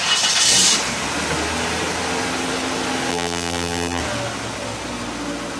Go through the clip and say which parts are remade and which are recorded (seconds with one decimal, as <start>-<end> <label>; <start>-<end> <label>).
0.0-3.1 recorded; 3.1-4.0 remade; 4.0-5.6 recorded